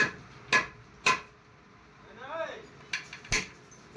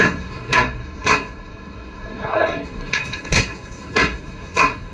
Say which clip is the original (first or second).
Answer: first